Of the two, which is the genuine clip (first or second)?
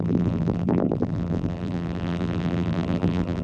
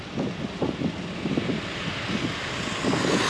second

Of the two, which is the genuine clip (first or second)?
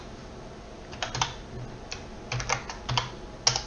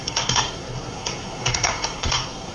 first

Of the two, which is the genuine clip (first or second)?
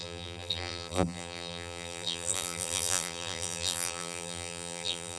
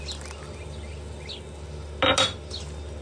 second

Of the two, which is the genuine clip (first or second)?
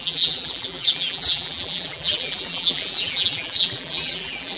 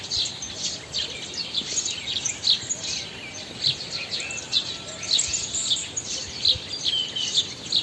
second